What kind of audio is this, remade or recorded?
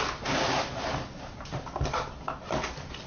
recorded